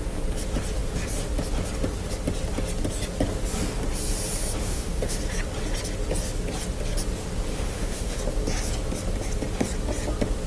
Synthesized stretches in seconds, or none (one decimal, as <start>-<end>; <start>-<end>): 4.6-5.2; 7.5-8.2